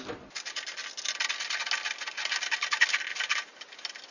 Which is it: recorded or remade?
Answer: recorded